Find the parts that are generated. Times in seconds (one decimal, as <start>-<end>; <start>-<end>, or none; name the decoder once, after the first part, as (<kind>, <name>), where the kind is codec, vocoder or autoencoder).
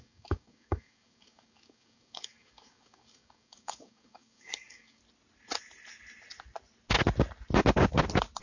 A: 0.0-5.0 (codec, DAC)